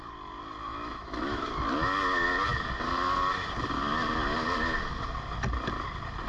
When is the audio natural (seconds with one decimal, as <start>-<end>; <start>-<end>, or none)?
0.0-0.6; 1.5-6.3

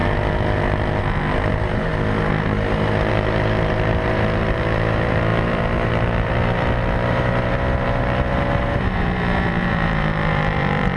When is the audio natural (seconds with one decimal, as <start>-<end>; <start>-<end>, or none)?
0.0-1.5; 1.9-3.1

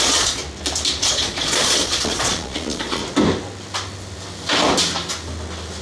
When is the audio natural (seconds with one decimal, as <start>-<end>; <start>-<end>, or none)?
0.4-1.0; 3.0-5.8

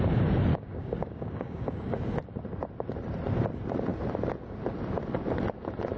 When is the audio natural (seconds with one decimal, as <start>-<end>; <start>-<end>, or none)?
0.0-0.5; 2.0-6.0

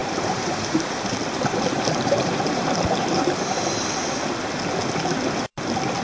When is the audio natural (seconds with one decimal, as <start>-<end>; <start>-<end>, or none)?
3.6-6.0

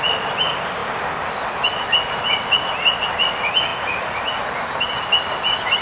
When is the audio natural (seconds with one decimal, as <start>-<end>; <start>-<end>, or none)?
0.0-5.8

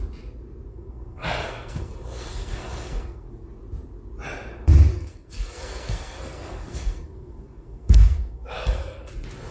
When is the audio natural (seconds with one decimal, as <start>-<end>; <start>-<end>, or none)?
0.0-0.7; 3.3-4.9; 9.1-9.5

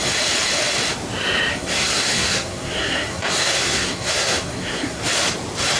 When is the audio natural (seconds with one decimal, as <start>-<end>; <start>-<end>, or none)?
0.0-1.5; 5.0-5.8